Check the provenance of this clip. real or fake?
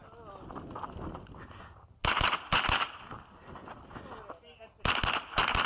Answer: real